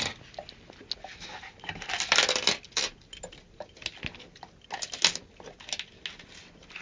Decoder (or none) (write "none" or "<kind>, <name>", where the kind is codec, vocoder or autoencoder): none